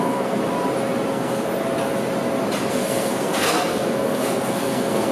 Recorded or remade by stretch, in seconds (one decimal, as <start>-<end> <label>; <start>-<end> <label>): 0.0-0.4 remade; 0.4-1.1 recorded; 1.1-1.5 remade; 1.5-2.7 recorded; 2.7-5.1 remade